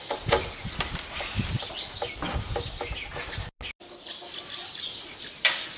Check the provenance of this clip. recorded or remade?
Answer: recorded